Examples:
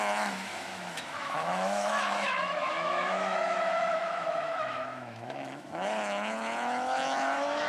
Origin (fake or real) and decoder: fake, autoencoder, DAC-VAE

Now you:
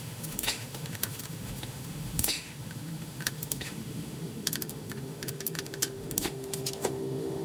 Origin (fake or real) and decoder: fake, autoencoder, DAC-VAE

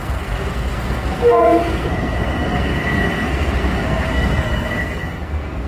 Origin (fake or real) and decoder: fake, codec, SNAC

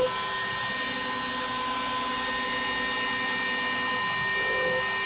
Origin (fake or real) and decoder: real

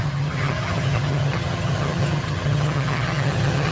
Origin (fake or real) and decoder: fake, vocoder, HiFi-GAN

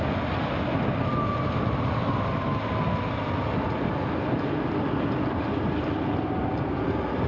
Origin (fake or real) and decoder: real